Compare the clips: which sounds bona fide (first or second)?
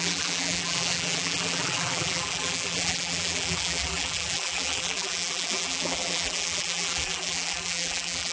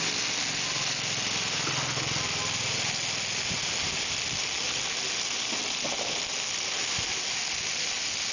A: second